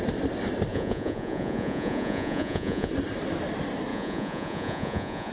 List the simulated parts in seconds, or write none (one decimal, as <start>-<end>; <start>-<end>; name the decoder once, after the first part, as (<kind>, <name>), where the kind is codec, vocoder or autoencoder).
0.7-2.9 (vocoder, Vocos); 3.9-5.3